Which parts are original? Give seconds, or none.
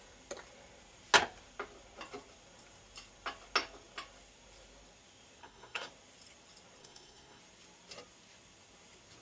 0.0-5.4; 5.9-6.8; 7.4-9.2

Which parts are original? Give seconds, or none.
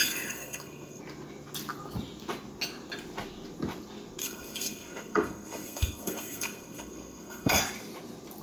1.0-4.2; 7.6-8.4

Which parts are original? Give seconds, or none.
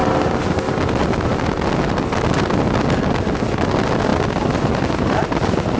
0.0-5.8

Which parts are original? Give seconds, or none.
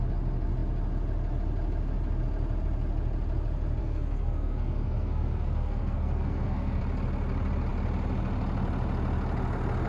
0.0-3.8; 6.8-9.9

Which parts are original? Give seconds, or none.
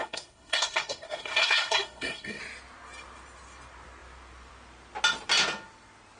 2.4-6.2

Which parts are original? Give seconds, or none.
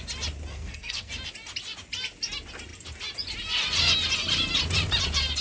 0.0-0.5; 1.1-5.4